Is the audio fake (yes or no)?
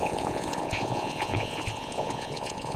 yes